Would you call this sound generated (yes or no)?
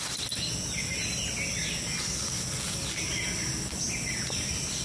no